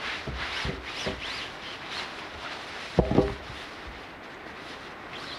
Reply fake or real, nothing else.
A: real